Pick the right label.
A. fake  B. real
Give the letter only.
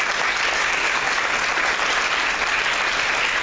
B